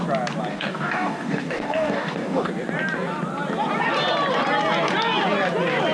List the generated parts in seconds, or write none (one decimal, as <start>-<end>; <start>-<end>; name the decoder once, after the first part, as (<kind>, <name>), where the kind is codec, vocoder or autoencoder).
0.5-2.5 (codec, DAC)